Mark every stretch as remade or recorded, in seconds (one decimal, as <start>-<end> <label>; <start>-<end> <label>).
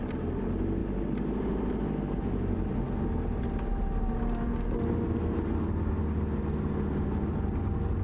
0.0-8.0 recorded